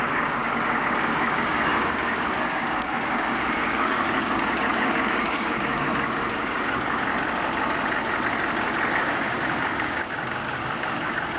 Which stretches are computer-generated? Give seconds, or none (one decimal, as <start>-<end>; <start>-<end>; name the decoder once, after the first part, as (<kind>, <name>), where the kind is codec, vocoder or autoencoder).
0.0-7.1 (codec, DAC); 9.0-11.4